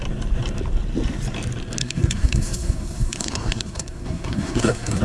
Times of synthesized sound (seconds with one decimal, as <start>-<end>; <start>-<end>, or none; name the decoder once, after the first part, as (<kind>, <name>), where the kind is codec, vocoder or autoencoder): 1.8-5.0 (codec, SNAC)